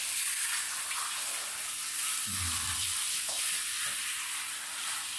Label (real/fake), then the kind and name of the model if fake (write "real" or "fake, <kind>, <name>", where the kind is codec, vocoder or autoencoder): fake, vocoder, BigVGAN v2